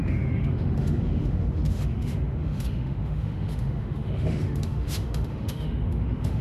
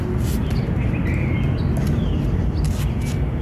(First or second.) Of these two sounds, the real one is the second